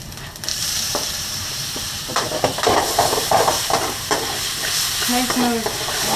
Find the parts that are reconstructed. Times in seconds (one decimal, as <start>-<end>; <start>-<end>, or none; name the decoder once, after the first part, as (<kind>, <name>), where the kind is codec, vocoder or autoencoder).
0.5-4.2 (vocoder, BigVGAN v2)